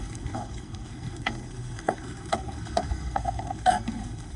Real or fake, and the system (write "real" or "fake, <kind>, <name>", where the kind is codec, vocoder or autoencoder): fake, codec, SNAC